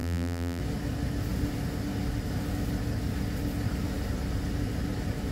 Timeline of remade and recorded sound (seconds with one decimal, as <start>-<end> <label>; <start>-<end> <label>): 0.0-0.6 remade; 0.6-5.3 recorded